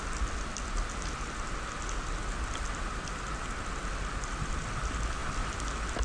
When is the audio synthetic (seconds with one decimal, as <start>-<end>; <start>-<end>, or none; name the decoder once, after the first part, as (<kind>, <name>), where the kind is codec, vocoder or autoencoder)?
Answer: none